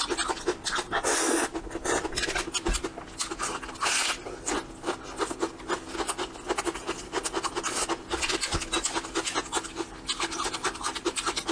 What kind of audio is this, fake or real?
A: real